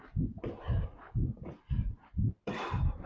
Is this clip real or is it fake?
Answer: fake